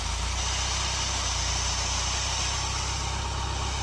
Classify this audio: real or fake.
real